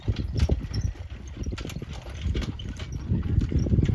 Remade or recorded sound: recorded